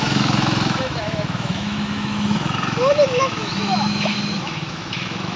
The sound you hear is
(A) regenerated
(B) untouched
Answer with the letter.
A